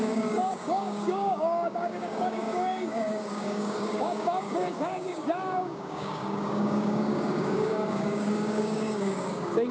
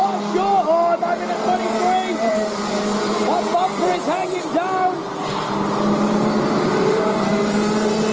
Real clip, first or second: second